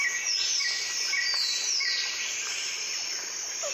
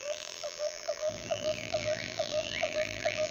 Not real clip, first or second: second